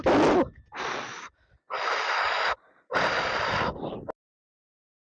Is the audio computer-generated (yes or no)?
no